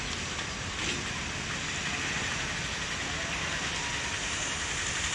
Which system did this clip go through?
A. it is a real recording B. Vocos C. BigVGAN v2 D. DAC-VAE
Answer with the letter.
A